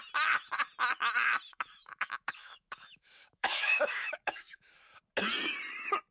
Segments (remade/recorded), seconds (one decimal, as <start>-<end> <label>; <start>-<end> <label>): 0.0-1.5 recorded; 1.5-5.0 remade; 5.0-6.1 recorded